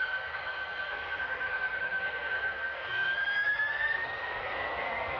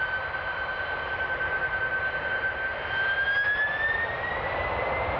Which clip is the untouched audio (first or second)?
second